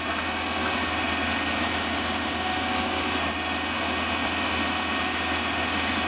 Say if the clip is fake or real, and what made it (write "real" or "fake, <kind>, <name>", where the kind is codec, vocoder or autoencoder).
real